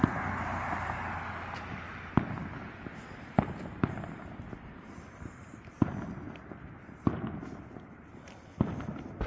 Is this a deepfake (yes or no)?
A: no